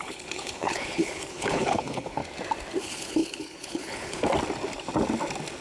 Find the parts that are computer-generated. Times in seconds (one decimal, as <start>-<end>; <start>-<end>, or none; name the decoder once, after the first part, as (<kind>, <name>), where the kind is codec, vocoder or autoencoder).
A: 0.0-2.2 (codec, HILCodec); 2.8-4.2